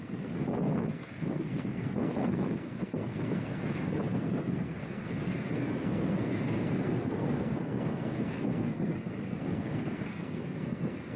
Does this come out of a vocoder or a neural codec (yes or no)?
yes